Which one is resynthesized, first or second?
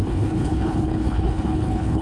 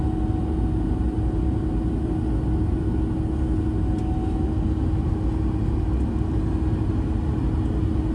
first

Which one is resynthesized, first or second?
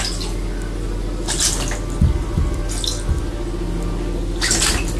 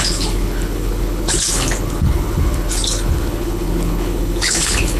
second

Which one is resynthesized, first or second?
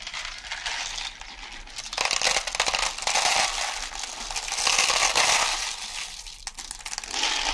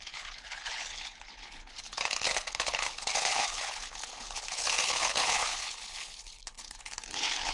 second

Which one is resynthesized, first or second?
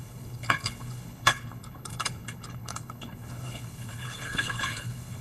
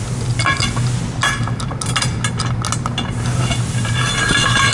first